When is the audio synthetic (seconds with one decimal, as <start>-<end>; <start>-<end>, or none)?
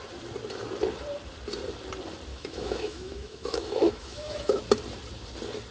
2.3-4.6